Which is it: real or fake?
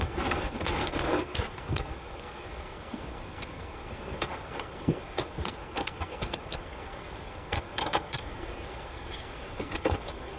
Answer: fake